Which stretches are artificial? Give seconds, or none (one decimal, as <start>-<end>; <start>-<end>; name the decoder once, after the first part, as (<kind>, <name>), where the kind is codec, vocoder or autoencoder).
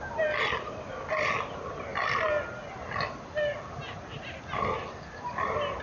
none